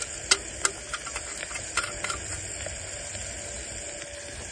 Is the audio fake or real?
real